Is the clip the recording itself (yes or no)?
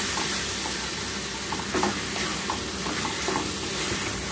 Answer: yes